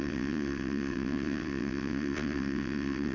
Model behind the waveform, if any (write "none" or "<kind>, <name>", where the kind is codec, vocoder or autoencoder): vocoder, WaveNeXt